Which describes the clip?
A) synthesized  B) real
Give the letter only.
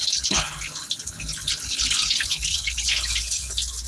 A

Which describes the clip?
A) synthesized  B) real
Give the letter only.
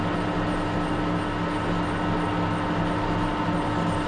B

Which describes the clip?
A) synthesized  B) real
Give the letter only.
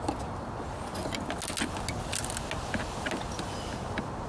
B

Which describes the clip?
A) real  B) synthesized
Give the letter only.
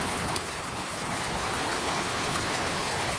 B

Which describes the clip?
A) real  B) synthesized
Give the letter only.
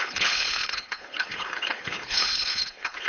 B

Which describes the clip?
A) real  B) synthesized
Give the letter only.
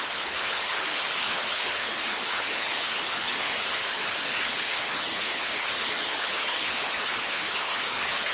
B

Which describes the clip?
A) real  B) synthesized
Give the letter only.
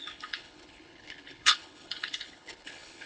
B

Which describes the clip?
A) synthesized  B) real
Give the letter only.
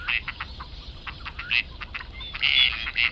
B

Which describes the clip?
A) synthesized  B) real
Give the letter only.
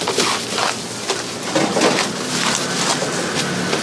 B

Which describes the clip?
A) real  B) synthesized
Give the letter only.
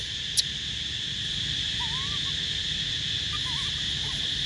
A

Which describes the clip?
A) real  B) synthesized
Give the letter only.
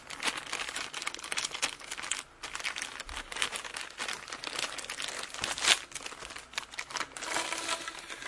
A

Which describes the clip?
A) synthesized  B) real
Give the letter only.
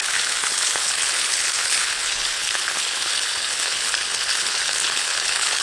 A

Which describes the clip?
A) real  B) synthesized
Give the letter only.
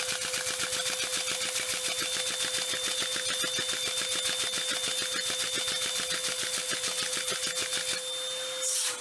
A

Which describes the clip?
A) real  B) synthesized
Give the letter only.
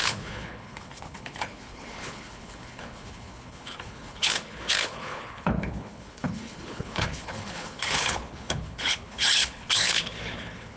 B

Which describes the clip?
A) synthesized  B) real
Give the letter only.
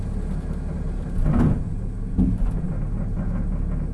B